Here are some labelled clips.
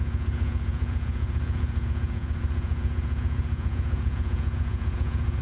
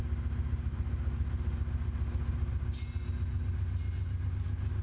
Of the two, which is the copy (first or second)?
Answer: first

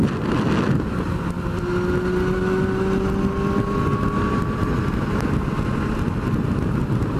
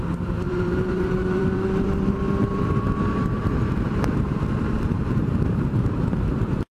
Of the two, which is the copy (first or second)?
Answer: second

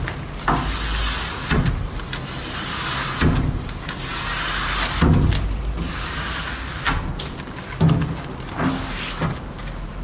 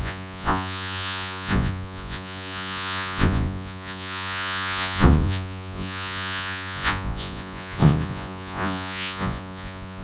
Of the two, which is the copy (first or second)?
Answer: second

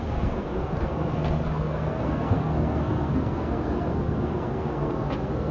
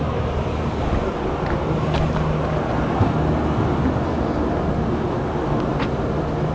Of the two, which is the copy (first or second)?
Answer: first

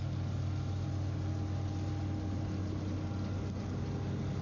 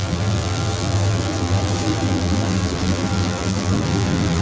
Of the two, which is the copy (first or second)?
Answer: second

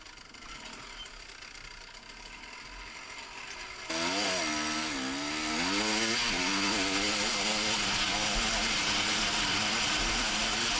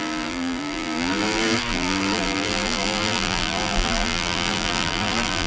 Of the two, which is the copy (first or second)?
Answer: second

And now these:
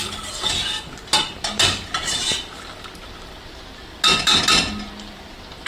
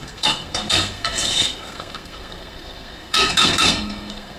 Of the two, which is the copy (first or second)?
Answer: second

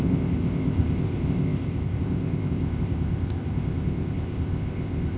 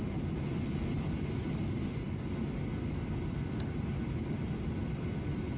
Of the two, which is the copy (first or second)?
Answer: first